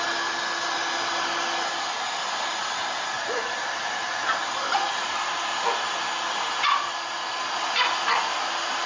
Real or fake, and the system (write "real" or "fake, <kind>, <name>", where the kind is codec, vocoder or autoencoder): real